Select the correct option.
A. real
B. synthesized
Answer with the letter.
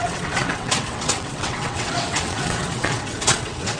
B